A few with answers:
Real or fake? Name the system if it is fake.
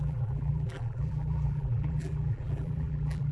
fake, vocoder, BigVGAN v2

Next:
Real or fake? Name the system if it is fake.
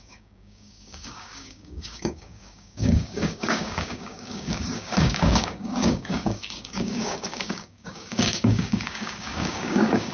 fake, codec, DAC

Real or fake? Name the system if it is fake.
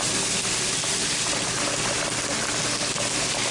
real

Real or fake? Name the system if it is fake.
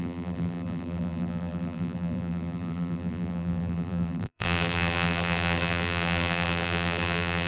fake, vocoder, BigVGAN v2